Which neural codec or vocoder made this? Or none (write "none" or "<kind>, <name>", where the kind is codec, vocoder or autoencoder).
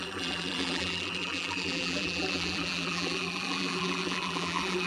vocoder, BigVGAN v2